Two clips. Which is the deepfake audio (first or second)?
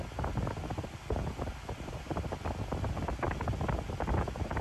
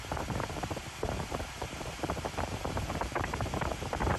second